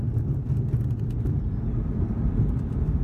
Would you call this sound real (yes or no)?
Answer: yes